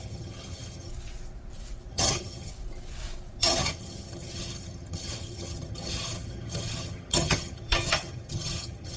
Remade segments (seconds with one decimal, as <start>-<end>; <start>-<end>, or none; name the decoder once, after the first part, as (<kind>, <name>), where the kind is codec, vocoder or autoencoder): 0.0-0.9 (vocoder, HiFi-GAN); 1.9-2.5; 3.4-9.0